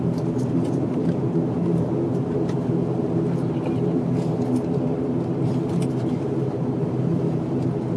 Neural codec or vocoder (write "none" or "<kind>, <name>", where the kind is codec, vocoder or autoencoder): vocoder, BigVGAN v2